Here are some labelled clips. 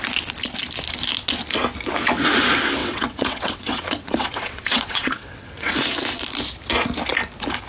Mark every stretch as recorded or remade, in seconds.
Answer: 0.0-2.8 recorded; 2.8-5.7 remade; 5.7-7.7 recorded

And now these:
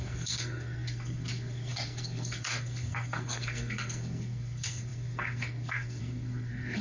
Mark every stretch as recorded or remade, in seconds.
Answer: 0.0-6.8 remade